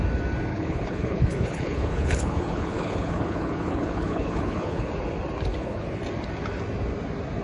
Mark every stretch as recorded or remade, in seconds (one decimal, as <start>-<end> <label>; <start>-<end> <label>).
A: 0.0-0.5 recorded; 0.5-4.9 remade; 4.9-5.5 recorded; 5.5-6.0 remade; 6.0-7.4 recorded